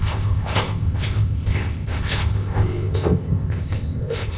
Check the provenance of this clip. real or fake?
fake